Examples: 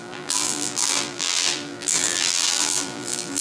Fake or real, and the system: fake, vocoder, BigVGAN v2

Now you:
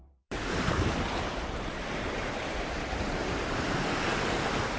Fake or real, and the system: fake, vocoder, BigVGAN v2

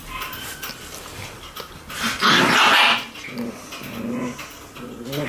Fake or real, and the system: real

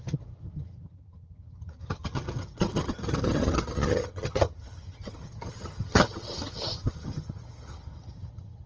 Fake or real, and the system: fake, vocoder, HiFi-GAN